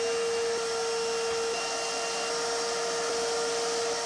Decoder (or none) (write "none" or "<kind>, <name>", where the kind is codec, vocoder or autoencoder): none